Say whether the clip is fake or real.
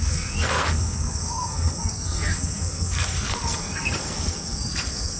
fake